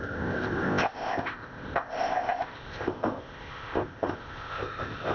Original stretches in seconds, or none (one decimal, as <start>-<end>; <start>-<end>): none